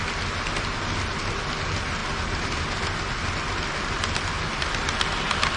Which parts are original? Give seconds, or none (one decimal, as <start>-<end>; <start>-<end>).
0.0-5.6